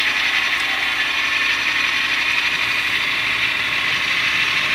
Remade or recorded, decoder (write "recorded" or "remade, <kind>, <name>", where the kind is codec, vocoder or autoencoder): remade, vocoder, BigVGAN v2